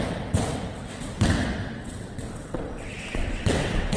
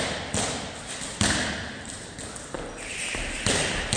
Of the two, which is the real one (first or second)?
second